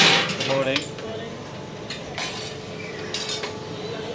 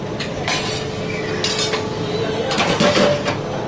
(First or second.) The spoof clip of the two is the first